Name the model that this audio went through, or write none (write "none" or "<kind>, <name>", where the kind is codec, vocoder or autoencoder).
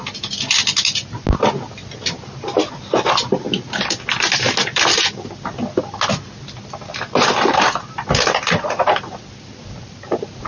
none